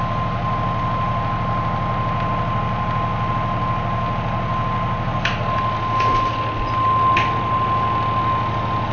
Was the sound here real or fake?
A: real